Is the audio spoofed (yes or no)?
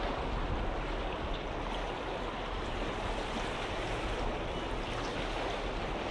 no